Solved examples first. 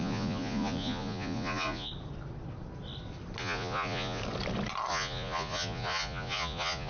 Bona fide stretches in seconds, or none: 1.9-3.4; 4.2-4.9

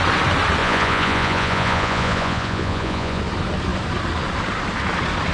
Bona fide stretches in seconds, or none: 0.0-0.6; 3.2-5.3

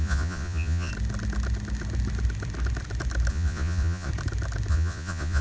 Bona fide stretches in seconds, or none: 0.9-3.3; 4.1-4.7

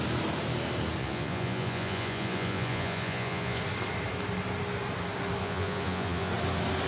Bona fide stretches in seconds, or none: 0.0-1.0; 3.6-5.4; 6.3-6.9

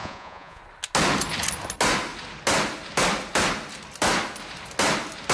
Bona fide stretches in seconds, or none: 0.6-5.3

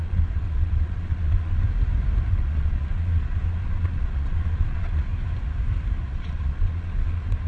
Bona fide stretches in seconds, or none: 1.6-2.3; 5.1-6.1

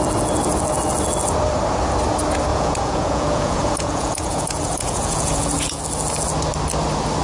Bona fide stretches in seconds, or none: 0.0-2.5; 5.8-7.2

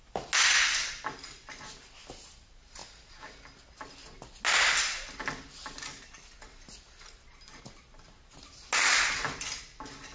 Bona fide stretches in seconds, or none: 0.0-10.1